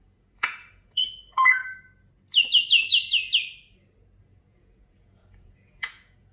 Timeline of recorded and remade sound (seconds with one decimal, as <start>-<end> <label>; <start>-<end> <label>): 0.0-1.6 remade; 1.6-4.2 recorded; 4.2-6.3 remade